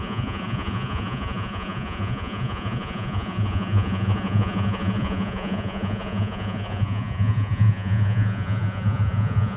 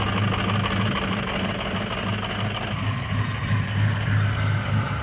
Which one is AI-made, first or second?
first